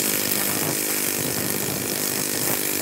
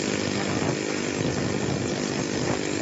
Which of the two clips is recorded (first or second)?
first